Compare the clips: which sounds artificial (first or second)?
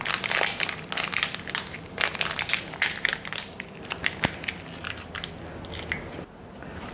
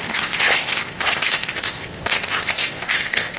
second